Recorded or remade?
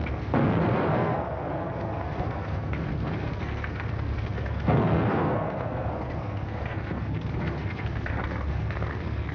remade